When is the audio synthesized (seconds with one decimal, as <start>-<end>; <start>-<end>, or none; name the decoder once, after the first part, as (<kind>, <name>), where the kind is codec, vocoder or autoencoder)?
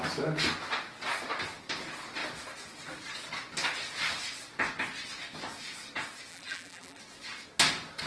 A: 6.3-7.0 (vocoder, BigVGAN v2)